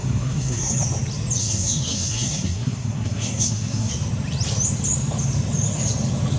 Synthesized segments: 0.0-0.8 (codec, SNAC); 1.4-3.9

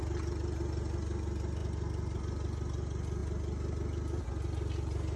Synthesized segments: none

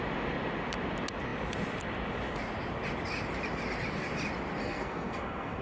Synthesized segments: 4.6-5.6 (codec, SNAC)